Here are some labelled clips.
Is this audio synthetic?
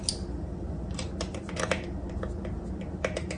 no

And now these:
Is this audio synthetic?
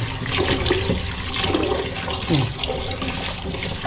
no